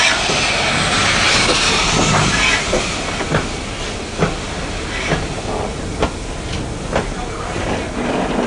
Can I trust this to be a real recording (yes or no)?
yes